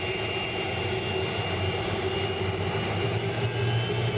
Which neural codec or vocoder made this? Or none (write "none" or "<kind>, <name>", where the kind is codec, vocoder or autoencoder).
none